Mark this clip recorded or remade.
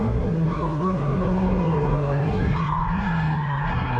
remade